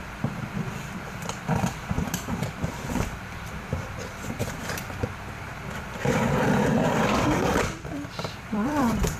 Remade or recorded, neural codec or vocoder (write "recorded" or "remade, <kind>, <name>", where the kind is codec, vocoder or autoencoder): remade, vocoder, BigVGAN v2